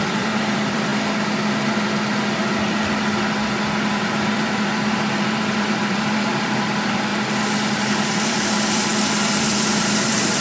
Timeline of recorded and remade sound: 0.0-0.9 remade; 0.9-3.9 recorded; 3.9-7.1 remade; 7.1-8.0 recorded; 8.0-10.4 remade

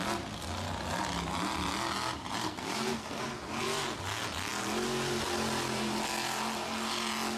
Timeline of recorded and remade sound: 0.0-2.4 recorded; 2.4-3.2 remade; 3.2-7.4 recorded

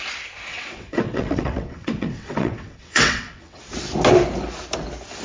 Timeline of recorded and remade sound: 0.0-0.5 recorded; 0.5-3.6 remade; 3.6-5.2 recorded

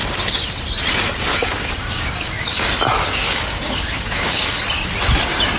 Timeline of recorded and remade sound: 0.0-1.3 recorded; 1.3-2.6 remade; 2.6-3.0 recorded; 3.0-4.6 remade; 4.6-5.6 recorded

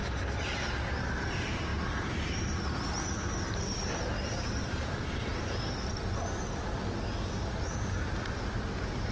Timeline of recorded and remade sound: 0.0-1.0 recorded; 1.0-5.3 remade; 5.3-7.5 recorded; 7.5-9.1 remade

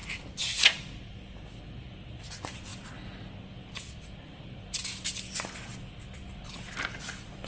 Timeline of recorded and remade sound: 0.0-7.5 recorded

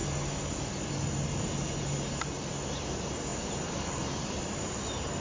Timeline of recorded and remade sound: 0.0-3.3 recorded; 3.3-4.7 remade; 4.7-5.2 recorded